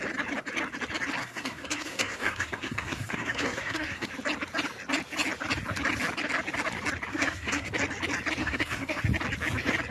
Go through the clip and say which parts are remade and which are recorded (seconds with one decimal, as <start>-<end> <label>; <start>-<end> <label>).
0.0-1.2 recorded; 1.2-4.1 remade; 4.1-7.1 recorded; 7.1-7.7 remade; 7.7-8.4 recorded; 8.4-9.0 remade; 9.0-9.9 recorded